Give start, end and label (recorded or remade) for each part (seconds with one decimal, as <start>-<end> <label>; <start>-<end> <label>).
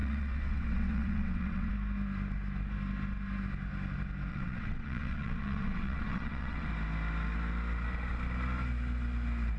0.0-1.7 remade; 1.7-4.3 recorded; 4.3-6.7 remade; 6.7-9.6 recorded